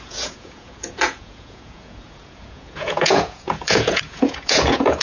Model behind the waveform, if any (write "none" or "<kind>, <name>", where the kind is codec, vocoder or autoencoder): vocoder, Vocos